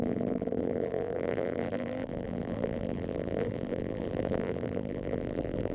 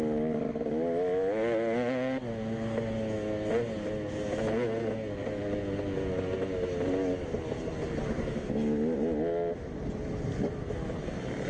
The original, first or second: second